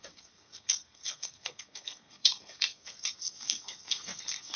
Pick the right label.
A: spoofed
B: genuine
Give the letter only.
A